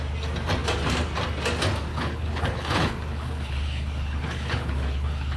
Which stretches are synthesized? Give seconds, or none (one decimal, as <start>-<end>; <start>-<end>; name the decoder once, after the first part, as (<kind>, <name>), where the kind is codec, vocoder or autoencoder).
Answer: 1.9-5.4 (codec, HILCodec)